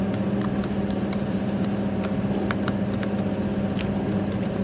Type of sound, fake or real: real